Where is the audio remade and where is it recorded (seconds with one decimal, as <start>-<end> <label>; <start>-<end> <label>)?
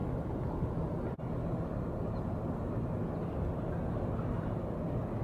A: 0.0-5.2 recorded